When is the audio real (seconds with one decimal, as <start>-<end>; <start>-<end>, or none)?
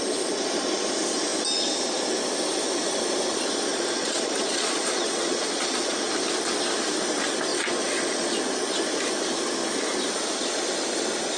0.0-3.7; 6.1-7.5; 8.4-11.4